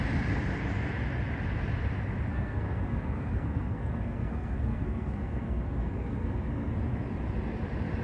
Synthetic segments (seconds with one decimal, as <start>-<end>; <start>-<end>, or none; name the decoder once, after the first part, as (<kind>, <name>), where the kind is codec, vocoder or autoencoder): 2.3-6.7 (codec, SNAC)

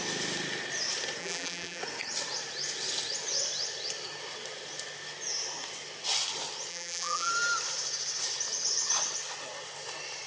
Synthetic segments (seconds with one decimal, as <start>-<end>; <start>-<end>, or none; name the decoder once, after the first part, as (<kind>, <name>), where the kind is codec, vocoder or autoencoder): 1.2-1.8 (vocoder, BigVGAN v2); 6.7-7.3

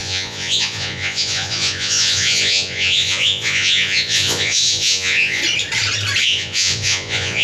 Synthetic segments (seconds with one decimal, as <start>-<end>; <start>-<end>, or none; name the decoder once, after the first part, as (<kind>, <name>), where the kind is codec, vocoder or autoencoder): 0.0-5.4 (vocoder, Vocos); 6.2-7.4

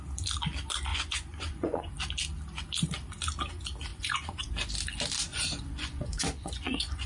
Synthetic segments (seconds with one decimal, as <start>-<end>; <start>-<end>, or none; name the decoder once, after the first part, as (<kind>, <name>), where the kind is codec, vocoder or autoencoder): 0.9-1.9 (vocoder, Vocos); 3.9-4.5; 5.3-7.1